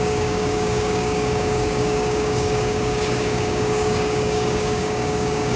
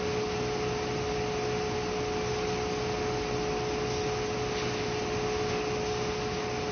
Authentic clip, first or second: second